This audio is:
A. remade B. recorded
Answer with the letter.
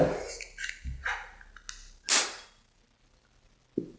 B